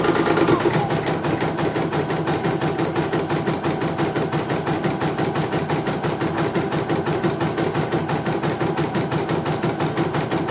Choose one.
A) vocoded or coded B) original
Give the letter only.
B